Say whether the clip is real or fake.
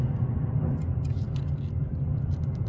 real